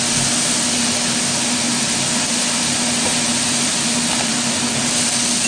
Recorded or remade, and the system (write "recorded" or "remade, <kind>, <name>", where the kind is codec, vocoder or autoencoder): recorded